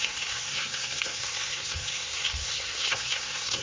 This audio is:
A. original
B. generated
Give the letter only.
B